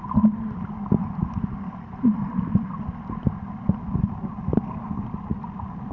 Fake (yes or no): no